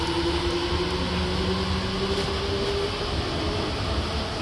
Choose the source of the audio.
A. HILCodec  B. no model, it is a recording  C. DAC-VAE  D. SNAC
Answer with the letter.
B